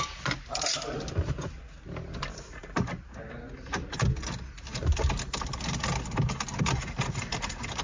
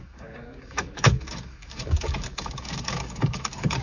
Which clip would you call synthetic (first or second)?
second